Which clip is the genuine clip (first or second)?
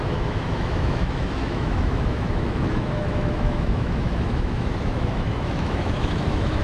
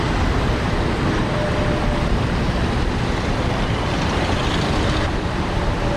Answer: second